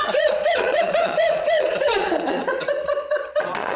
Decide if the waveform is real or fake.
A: fake